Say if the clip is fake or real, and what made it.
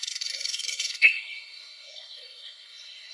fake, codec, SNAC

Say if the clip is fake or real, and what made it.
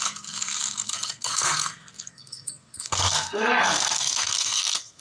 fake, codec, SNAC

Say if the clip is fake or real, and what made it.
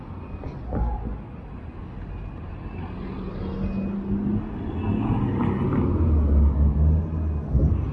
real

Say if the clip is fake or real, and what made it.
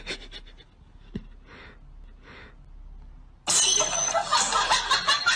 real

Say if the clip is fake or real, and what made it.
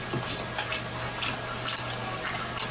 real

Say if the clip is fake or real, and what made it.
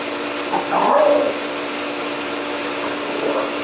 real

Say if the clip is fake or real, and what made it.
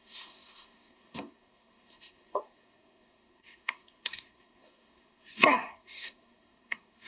fake, codec, SNAC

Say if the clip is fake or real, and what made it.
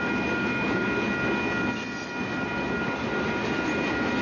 real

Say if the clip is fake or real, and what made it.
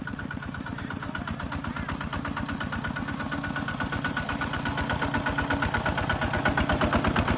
real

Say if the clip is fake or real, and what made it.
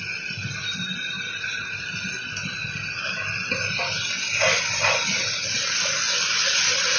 real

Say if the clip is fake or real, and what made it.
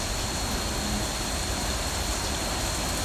real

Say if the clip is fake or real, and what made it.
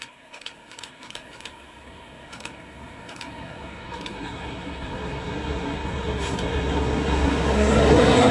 fake, codec, SNAC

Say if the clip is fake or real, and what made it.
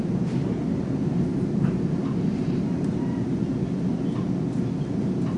real